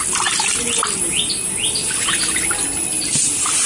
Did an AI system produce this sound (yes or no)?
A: no